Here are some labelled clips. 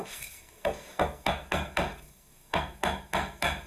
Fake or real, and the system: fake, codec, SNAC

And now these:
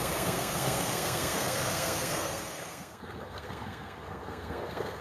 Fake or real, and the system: fake, codec, SNAC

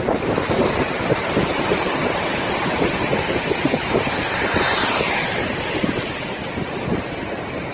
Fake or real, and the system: fake, vocoder, BigVGAN v2